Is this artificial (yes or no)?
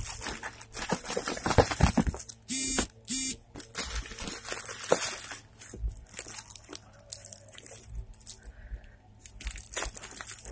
no